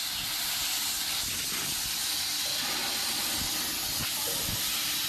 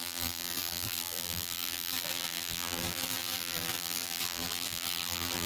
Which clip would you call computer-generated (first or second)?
second